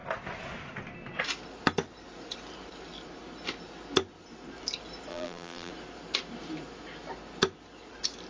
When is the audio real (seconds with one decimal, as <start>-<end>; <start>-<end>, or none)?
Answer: 0.0-5.1; 5.7-8.3